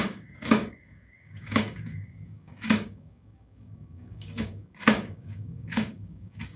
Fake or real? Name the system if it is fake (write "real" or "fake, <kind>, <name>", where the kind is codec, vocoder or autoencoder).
fake, codec, DAC